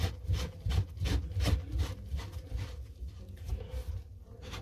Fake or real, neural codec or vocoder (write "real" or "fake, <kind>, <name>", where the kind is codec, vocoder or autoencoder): real